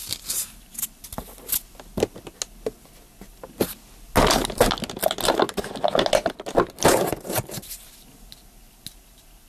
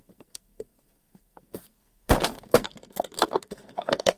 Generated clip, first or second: second